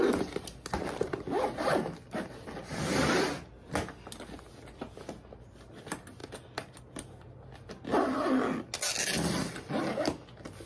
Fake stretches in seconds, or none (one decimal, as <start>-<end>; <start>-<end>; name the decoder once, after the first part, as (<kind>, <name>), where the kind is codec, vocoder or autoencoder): none